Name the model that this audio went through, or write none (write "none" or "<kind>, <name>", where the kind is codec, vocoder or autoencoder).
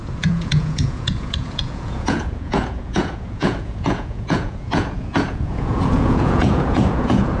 vocoder, Vocos